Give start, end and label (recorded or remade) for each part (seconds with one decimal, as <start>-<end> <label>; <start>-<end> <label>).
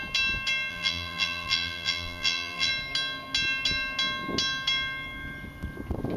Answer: 0.0-0.7 recorded; 0.7-2.7 remade; 2.7-6.2 recorded